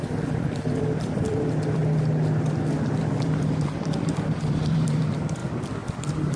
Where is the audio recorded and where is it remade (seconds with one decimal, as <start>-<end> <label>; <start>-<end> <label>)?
0.0-1.8 remade; 1.8-2.7 recorded; 2.7-5.4 remade; 5.4-6.0 recorded; 6.0-6.4 remade